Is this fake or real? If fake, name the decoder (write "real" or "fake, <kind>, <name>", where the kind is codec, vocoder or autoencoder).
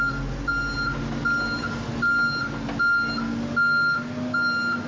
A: real